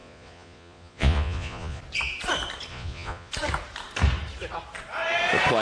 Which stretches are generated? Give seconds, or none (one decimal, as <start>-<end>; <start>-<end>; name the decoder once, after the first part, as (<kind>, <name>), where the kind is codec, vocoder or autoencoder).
0.0-1.8 (vocoder, Vocos); 2.7-3.3